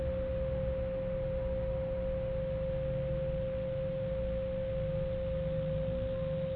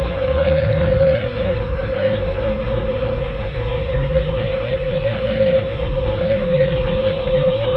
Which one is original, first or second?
first